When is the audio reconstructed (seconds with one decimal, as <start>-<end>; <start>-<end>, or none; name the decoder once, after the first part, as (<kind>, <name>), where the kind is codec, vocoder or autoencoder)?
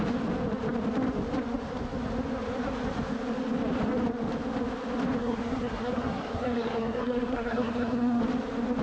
5.2-8.2 (codec, SNAC)